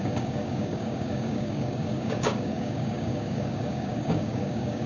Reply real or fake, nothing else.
fake